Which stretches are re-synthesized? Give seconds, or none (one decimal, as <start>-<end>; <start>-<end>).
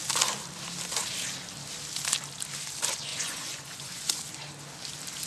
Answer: 3.1-4.2